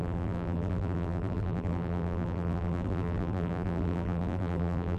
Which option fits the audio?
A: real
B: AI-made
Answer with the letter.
B